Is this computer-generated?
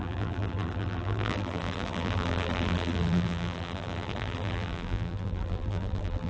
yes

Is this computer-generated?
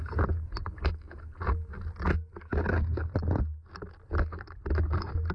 no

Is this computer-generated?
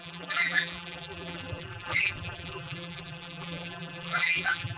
yes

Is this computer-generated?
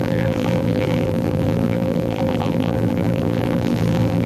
yes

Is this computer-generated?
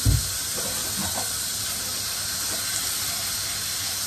no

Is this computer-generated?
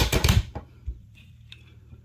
yes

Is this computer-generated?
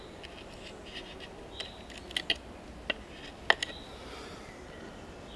no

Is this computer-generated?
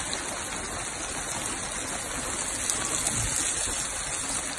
no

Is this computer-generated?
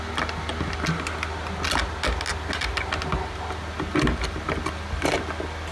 no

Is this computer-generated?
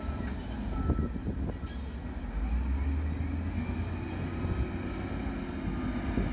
no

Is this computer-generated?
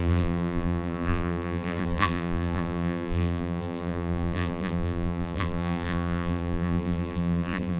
yes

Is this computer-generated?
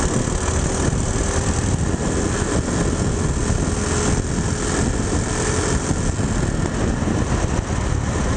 no